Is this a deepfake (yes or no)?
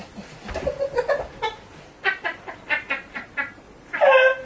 no